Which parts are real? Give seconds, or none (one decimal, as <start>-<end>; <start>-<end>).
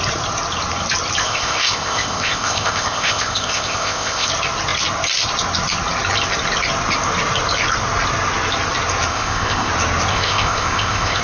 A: 0.0-1.2; 4.3-9.1; 9.7-10.1